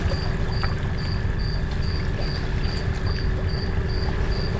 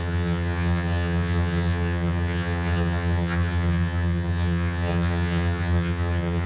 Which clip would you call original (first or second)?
first